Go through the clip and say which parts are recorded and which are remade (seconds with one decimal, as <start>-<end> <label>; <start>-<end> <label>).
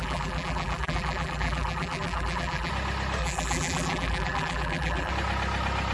0.0-2.7 remade; 2.7-3.2 recorded; 3.2-5.1 remade; 5.1-5.9 recorded